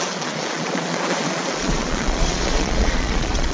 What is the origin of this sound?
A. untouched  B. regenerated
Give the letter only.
B